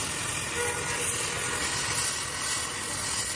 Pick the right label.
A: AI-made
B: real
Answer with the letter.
B